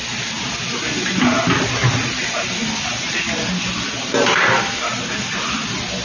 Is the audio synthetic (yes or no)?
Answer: no